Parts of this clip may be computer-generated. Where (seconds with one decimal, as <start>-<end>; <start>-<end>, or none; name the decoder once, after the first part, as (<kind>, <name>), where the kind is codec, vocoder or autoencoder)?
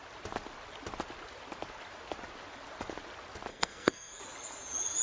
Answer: 3.5-4.2 (codec, SNAC)